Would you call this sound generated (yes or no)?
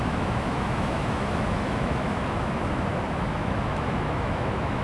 yes